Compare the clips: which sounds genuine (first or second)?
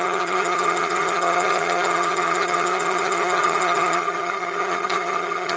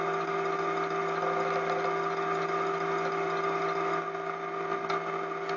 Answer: second